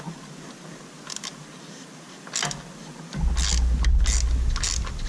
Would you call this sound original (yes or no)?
yes